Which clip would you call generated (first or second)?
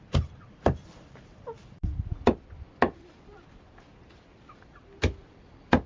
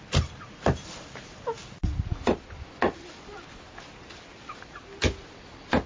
first